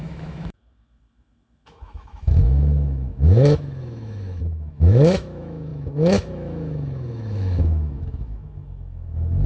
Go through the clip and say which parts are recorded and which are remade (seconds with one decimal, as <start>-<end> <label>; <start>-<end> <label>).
0.0-9.5 remade